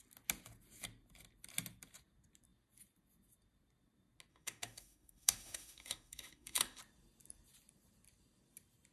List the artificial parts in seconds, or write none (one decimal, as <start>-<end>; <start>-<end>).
4.3-6.8